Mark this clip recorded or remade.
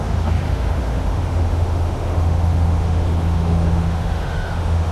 remade